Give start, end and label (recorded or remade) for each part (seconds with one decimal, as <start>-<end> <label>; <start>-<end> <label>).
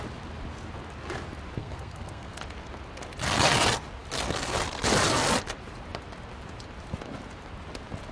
0.0-1.6 recorded; 1.6-2.4 remade; 2.4-8.1 recorded